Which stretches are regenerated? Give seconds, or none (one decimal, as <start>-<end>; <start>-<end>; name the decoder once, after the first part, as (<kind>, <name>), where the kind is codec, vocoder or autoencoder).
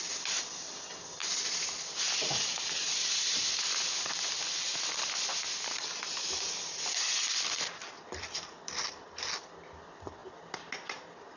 0.0-4.7 (vocoder, BigVGAN v2); 7.4-10.2